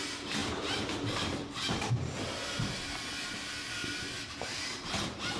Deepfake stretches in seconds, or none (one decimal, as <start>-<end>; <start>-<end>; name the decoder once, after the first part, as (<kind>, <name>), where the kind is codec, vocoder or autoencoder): 0.4-3.2 (vocoder, BigVGAN v2)